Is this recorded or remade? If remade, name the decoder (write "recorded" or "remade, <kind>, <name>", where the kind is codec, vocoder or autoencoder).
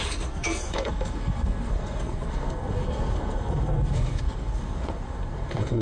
remade, codec, SNAC